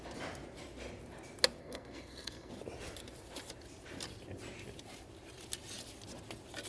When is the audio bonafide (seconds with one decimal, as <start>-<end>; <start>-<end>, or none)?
0.0-1.6; 2.5-6.7